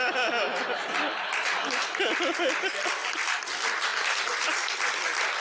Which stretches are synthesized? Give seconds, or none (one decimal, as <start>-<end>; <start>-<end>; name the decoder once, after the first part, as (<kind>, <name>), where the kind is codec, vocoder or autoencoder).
none